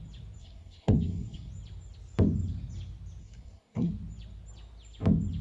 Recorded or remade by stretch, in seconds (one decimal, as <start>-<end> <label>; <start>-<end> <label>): 0.0-0.4 recorded; 0.4-1.5 remade; 1.5-3.2 recorded; 3.2-3.9 remade; 3.9-5.4 recorded